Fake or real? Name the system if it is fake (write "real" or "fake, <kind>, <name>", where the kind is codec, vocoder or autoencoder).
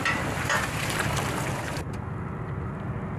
real